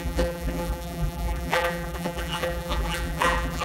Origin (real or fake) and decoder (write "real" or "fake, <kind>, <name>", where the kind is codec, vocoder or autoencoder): fake, vocoder, BigVGAN v2